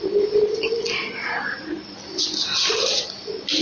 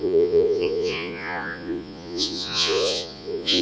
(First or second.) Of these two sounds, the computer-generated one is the second